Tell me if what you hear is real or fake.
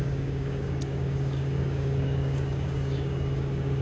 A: fake